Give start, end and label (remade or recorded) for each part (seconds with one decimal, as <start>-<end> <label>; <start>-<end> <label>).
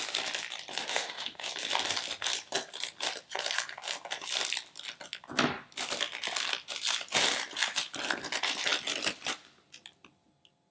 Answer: 0.0-0.8 recorded; 0.8-1.5 remade; 1.5-10.7 recorded